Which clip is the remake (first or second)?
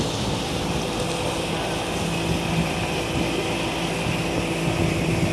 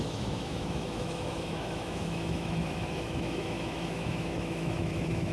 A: second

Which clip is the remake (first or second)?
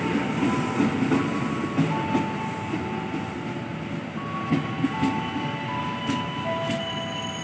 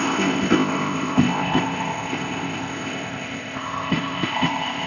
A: second